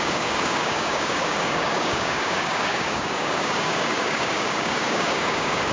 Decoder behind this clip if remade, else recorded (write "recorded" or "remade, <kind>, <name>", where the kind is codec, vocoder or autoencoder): remade, codec, DAC